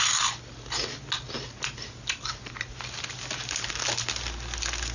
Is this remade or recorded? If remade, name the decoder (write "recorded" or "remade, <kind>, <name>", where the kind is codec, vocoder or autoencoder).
recorded